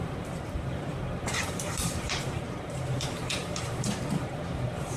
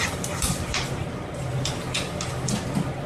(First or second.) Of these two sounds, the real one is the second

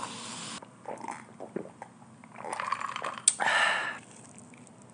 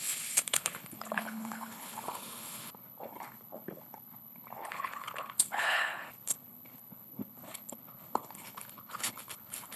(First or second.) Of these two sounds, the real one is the first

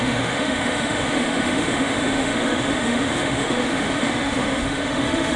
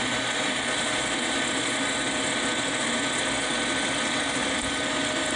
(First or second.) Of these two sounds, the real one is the second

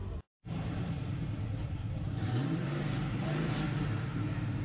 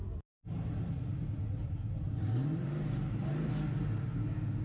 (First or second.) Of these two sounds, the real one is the second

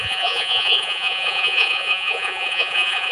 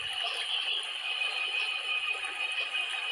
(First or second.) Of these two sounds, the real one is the second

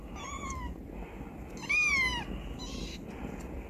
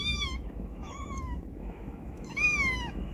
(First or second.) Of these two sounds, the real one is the first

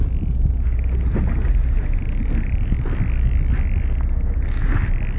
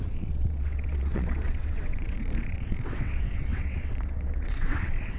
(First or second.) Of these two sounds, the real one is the first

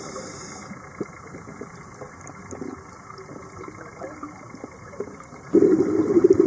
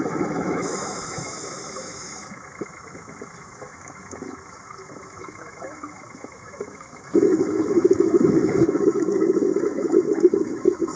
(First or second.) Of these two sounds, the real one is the first